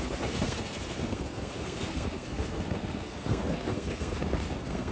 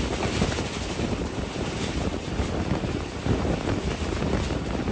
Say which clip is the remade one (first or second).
first